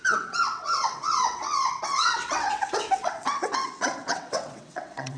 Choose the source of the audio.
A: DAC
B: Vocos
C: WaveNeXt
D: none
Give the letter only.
C